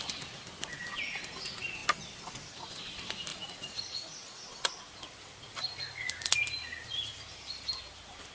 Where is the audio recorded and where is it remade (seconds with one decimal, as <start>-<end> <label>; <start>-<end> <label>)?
0.0-3.3 recorded; 3.3-4.5 remade; 4.5-8.3 recorded